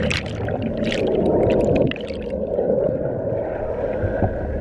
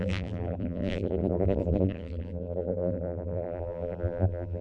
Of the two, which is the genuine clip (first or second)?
first